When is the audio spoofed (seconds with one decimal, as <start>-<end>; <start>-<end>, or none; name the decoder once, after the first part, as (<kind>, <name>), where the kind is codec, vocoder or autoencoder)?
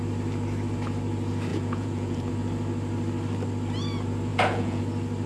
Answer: 1.5-2.3 (vocoder, Vocos); 4.3-4.8